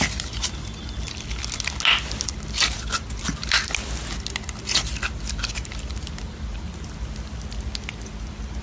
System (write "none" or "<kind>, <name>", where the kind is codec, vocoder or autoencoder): none